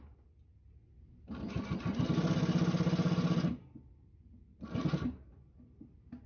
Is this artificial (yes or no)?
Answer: no